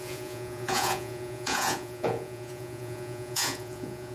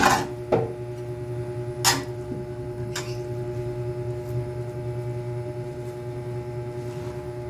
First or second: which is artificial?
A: first